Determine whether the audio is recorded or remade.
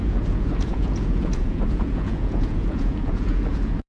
remade